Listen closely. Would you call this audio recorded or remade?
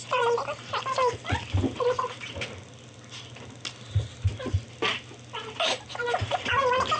recorded